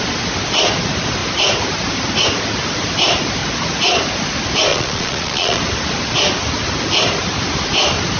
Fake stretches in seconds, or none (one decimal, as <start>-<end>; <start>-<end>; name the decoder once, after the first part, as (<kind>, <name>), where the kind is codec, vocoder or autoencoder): 4.7-5.6 (vocoder, Vocos)